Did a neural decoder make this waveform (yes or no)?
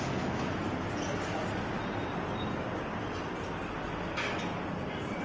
no